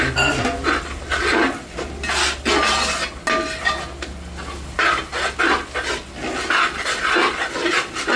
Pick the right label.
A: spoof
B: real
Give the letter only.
B